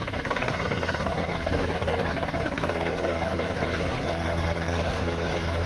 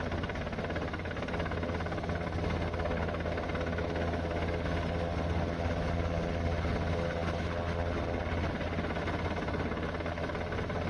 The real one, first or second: second